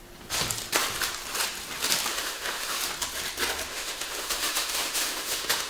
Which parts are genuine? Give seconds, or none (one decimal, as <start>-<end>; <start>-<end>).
0.0-2.1; 2.8-3.7